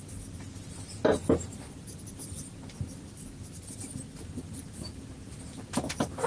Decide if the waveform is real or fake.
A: real